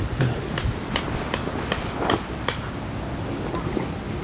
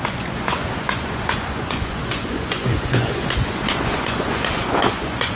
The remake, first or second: second